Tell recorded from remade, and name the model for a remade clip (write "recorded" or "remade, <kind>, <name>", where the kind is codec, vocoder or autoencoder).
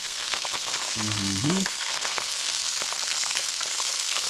remade, codec, SNAC